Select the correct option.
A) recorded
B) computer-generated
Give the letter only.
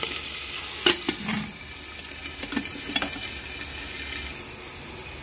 A